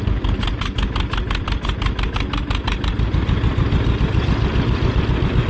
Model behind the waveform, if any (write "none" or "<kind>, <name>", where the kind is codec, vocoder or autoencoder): none